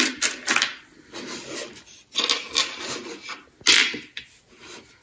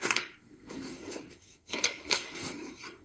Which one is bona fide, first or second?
first